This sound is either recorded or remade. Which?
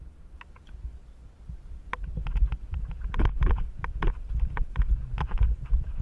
recorded